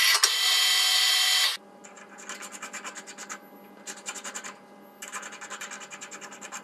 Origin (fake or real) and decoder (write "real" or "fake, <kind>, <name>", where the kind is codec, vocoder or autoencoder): real